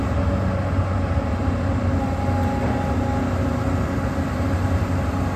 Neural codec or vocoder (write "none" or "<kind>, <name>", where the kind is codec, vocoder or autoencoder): none